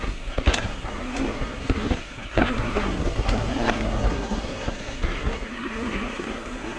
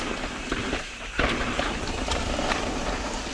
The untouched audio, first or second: second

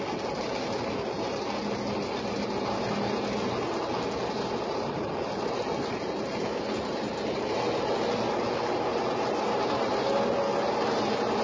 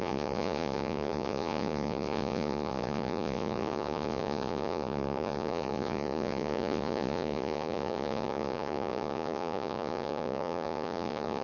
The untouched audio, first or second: first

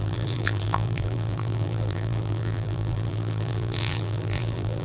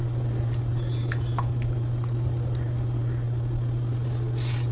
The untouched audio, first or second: second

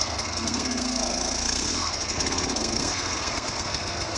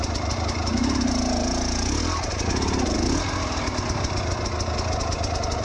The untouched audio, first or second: second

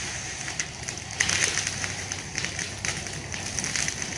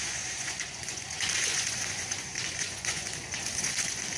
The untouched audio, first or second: first